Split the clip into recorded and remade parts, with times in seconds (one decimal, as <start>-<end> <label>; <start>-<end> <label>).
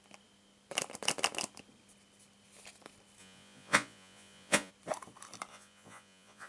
0.0-3.2 recorded; 3.2-4.7 remade; 4.7-5.5 recorded; 5.5-6.5 remade